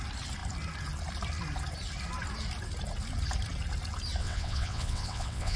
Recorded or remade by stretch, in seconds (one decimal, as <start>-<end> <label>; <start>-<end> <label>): 0.0-4.2 recorded; 4.2-5.6 remade